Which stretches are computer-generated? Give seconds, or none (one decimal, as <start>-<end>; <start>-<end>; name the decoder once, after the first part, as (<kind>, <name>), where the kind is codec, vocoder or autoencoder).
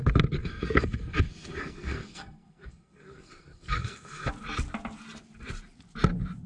0.4-4.3 (codec, SNAC)